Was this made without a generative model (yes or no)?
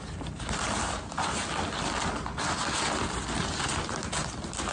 yes